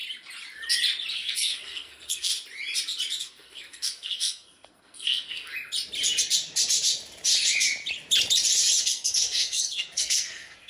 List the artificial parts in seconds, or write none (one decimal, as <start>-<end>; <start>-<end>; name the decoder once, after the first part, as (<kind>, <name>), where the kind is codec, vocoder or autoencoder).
1.1-2.3 (codec, SNAC); 3.2-5.5; 8.8-10.7